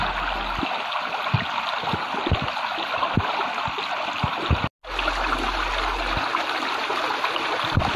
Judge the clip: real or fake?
real